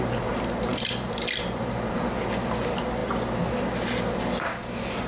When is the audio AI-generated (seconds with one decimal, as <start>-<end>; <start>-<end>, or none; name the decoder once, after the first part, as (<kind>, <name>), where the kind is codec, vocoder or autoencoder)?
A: 0.7-2.1 (vocoder, BigVGAN v2)